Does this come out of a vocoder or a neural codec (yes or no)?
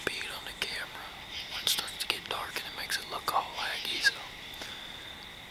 no